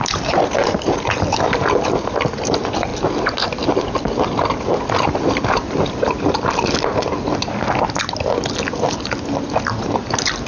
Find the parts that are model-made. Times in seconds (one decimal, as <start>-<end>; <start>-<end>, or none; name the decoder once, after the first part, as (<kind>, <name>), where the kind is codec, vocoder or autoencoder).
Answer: none